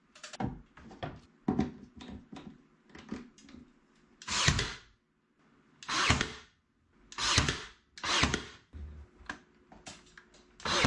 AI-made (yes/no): no